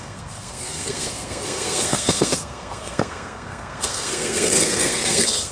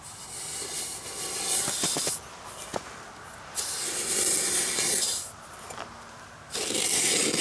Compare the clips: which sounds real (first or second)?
second